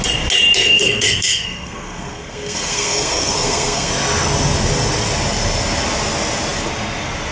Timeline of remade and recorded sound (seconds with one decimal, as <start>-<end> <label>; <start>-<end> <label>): 0.0-0.6 recorded; 0.6-3.9 remade; 3.9-7.3 recorded